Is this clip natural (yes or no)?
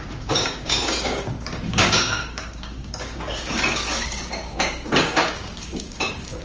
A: no